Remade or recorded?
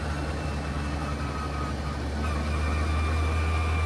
recorded